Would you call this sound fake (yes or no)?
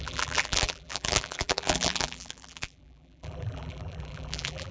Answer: yes